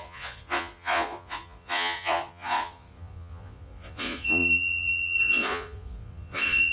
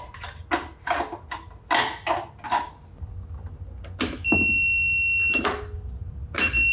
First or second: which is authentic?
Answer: second